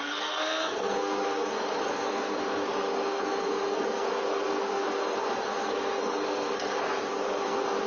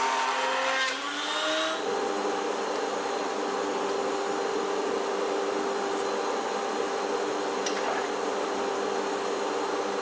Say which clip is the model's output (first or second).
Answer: first